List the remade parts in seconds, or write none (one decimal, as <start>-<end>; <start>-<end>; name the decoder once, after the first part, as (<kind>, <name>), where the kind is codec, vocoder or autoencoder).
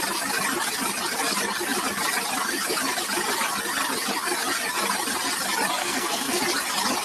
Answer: 5.8-6.4 (codec, SNAC)